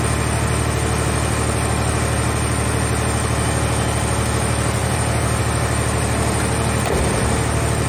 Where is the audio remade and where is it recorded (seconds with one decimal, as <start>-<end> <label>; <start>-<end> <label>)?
0.0-4.8 recorded; 4.8-5.4 remade; 5.4-7.9 recorded